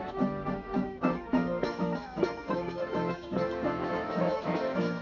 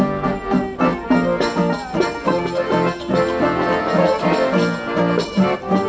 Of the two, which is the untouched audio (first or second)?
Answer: second